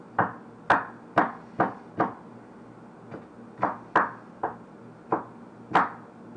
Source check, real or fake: real